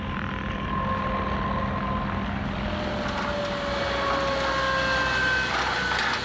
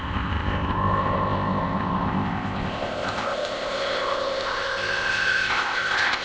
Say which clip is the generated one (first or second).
second